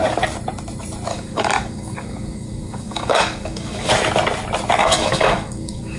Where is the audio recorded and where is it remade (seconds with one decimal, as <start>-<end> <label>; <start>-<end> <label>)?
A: 0.0-1.1 recorded; 1.1-3.9 remade; 3.9-4.8 recorded; 4.8-6.0 remade